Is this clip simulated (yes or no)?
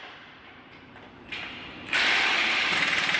yes